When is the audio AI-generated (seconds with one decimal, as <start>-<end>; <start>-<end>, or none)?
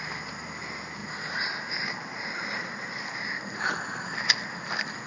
none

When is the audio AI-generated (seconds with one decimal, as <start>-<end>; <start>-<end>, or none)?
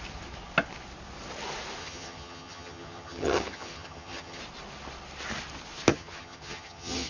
1.8-4.4; 5.9-7.1